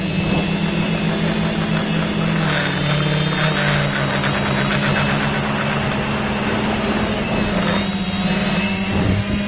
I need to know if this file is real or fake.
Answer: real